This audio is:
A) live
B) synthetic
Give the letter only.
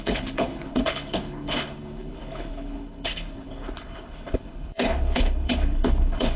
B